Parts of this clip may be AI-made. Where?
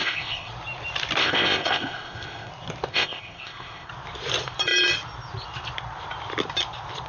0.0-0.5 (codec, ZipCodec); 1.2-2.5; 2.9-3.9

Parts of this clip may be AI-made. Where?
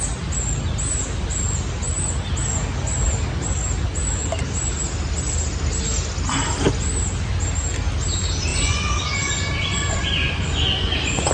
8.5-11.3 (vocoder, Vocos)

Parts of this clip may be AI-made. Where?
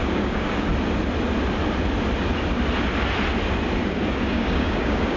0.0-0.7 (codec, DAC); 3.8-5.2